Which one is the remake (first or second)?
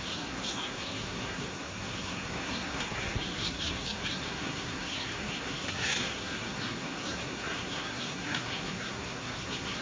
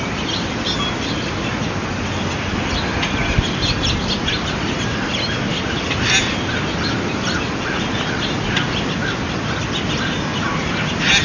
first